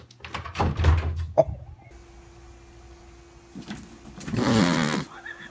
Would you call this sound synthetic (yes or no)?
no